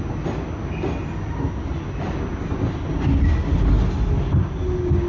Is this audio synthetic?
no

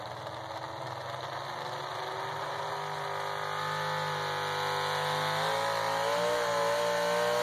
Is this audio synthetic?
no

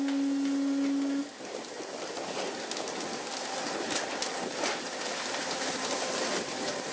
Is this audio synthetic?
no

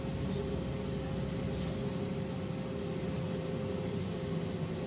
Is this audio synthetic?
no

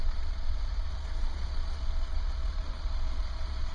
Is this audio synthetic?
yes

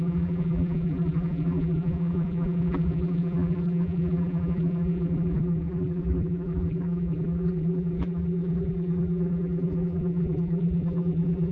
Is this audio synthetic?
yes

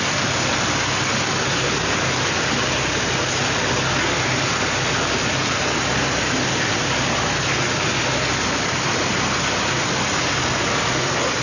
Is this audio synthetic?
no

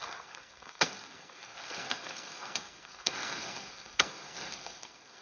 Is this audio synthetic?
yes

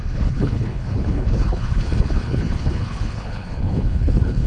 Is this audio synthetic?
yes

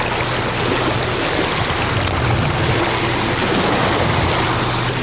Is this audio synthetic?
no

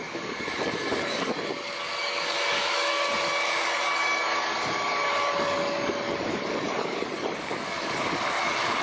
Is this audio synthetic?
yes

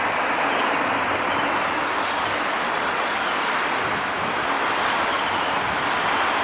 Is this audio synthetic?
no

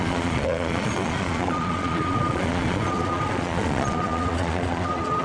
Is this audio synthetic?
yes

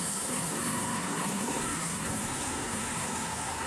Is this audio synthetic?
yes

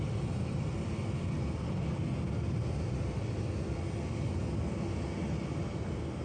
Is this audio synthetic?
no